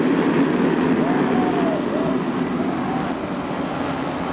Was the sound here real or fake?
real